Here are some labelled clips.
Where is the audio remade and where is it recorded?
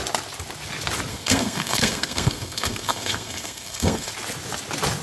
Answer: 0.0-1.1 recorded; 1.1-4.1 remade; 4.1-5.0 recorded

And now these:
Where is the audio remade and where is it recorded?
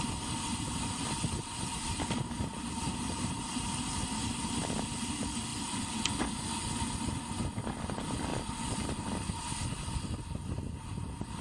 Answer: 0.0-0.5 recorded; 0.5-1.1 remade; 1.1-11.4 recorded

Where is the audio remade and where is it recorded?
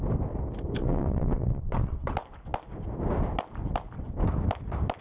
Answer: 0.0-0.8 recorded; 0.8-2.1 remade; 2.1-5.0 recorded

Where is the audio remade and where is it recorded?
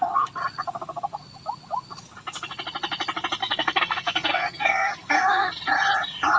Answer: 0.0-3.4 recorded; 3.4-5.5 remade; 5.5-6.4 recorded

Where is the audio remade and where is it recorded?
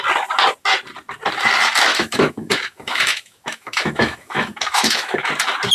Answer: 0.0-1.9 recorded; 1.9-5.3 remade; 5.3-5.7 recorded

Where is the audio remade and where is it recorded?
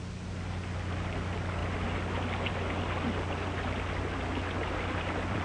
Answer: 0.0-5.4 recorded